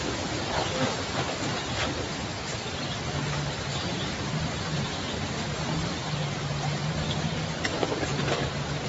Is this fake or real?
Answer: real